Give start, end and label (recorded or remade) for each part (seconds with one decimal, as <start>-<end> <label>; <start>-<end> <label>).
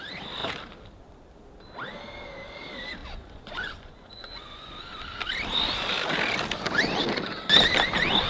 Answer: 0.0-3.0 recorded; 3.0-4.7 remade; 4.7-8.3 recorded